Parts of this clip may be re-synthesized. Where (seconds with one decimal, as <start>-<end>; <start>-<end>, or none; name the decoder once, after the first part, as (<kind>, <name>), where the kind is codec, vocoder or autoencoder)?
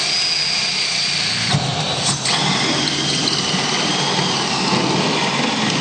none